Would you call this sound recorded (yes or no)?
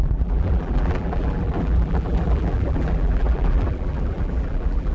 no